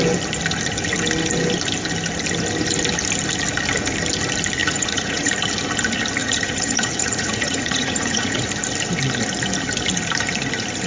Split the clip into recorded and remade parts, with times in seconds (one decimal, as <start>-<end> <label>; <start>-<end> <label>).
0.0-4.6 recorded; 4.6-5.3 remade; 5.3-6.2 recorded; 6.2-8.5 remade; 8.5-10.9 recorded